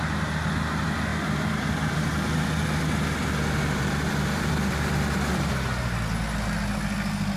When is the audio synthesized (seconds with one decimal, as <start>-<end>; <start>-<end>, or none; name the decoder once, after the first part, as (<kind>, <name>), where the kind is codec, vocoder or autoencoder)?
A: 1.1-5.5 (vocoder, BigVGAN v2)